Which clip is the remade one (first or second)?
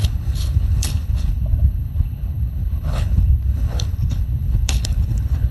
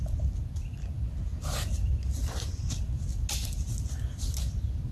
first